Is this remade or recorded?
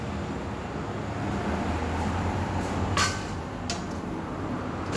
recorded